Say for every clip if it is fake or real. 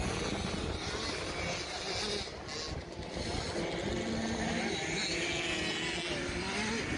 real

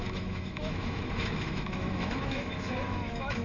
fake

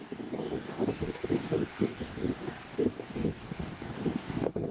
fake